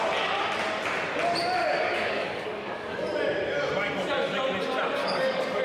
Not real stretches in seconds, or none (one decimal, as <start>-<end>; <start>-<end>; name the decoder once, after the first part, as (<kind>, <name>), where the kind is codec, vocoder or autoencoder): 1.6-3.1 (codec, DAC); 5.0-5.6

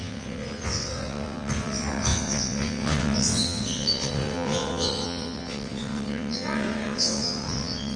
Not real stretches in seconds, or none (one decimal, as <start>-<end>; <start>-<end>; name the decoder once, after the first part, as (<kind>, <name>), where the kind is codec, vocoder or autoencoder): 0.0-8.0 (vocoder, WaveNeXt)

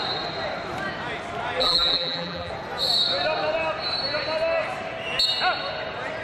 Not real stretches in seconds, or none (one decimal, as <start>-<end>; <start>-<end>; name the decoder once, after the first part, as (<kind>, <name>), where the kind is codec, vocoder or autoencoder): 1.6-2.5 (vocoder, BigVGAN v2)